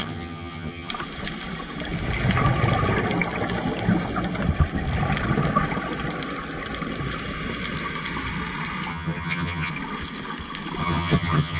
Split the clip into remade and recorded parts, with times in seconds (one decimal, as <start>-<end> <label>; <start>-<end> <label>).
0.0-0.9 remade; 0.9-8.9 recorded; 8.9-9.7 remade; 9.7-10.8 recorded; 10.8-11.6 remade